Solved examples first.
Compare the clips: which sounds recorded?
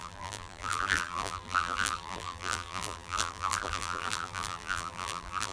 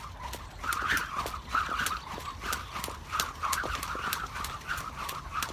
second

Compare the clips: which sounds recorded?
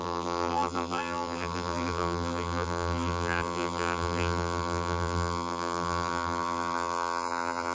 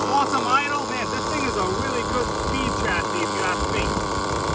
second